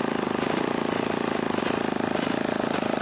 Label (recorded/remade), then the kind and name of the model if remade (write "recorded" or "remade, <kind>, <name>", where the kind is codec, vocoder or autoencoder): recorded